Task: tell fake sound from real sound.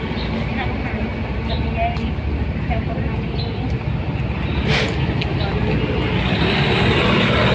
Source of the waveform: real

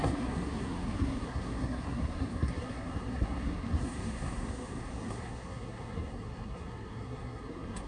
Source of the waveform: fake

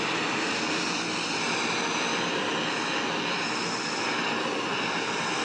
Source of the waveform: real